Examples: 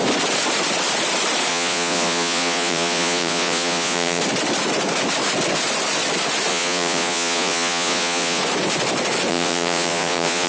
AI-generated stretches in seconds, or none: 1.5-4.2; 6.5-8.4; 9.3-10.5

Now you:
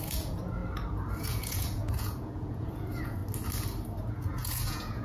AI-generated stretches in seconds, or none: 0.0-0.6; 1.2-3.2; 4.1-5.0

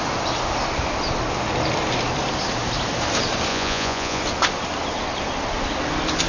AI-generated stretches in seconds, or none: 3.5-4.2

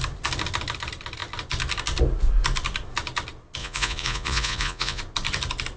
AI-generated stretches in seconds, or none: 3.6-5.0

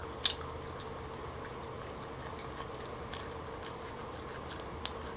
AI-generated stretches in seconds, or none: none